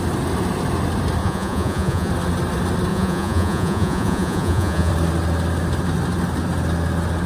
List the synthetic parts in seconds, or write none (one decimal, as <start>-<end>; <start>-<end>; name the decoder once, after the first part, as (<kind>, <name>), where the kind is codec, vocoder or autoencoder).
1.2-2.1 (vocoder, Vocos); 2.9-4.9